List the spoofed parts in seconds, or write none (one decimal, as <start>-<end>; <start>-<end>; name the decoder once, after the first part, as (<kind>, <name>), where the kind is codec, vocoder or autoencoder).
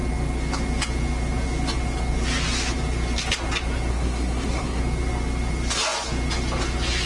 3.9-4.8 (codec, SNAC)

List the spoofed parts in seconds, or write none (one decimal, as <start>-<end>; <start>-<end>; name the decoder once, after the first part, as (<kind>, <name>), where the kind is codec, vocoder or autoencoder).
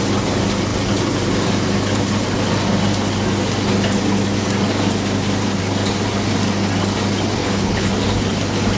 7.4-7.9 (codec, HILCodec)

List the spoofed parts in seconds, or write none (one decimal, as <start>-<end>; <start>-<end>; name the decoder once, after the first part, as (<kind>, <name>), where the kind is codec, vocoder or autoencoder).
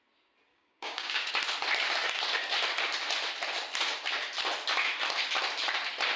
0.5-1.3 (codec, DAC)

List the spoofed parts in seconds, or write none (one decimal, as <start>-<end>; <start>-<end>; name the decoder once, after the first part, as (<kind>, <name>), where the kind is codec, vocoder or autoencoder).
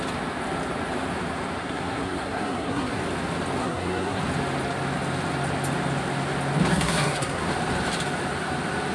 1.6-3.0 (codec, SNAC); 3.6-4.2; 6.7-7.5